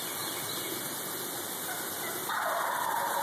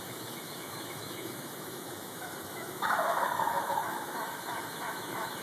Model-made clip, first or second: second